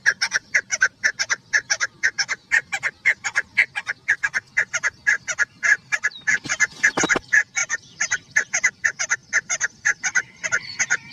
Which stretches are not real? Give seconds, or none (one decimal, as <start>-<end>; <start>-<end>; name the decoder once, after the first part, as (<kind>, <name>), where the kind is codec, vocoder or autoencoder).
7.6-8.7 (vocoder, BigVGAN v2); 9.2-10.5